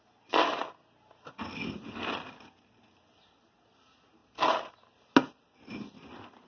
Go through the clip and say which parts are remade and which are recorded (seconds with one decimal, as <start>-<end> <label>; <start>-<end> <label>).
0.0-6.5 recorded